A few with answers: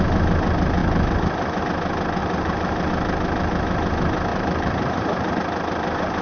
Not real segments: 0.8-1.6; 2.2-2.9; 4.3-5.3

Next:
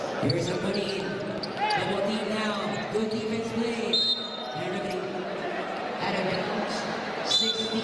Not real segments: 2.2-3.2; 5.0-7.2

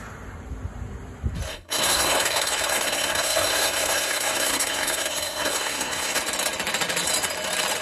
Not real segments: 1.5-6.2

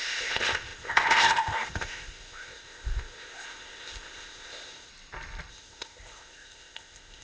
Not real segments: 0.0-4.9; 5.5-7.2